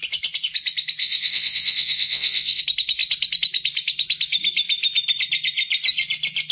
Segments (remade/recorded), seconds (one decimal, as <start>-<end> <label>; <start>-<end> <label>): 0.0-1.0 recorded; 1.0-2.6 remade; 2.6-6.5 recorded